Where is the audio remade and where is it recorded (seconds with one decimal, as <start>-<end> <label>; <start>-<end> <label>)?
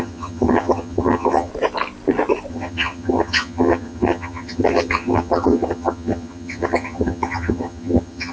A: 0.0-1.5 remade; 1.5-2.5 recorded; 2.5-8.3 remade